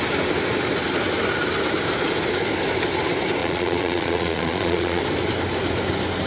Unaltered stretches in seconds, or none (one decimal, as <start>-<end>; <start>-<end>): 0.0-3.4; 5.0-6.3